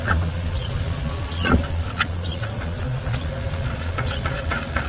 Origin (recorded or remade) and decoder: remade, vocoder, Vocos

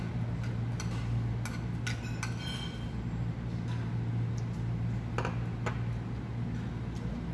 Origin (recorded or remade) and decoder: recorded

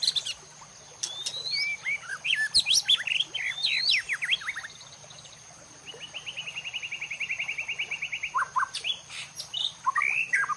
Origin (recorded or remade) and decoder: recorded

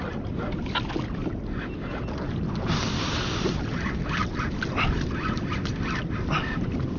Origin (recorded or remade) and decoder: recorded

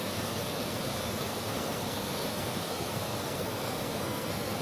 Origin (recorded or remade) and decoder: remade, codec, SNAC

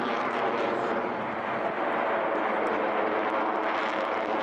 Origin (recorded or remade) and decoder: recorded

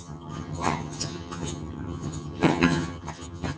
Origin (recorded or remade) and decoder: remade, vocoder, HiFi-GAN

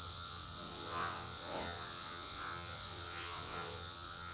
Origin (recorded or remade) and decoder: remade, vocoder, WaveNeXt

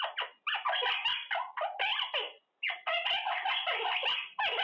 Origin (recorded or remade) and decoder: recorded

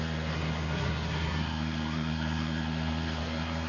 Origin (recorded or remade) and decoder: remade, codec, SNAC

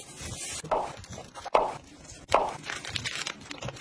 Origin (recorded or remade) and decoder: recorded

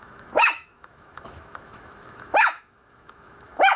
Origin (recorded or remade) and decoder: remade, autoencoder, DAC-VAE